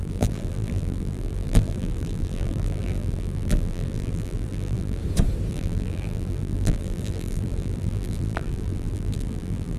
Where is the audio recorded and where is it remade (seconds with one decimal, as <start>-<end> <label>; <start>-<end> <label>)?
0.0-5.0 remade; 5.0-5.5 recorded; 5.5-9.8 remade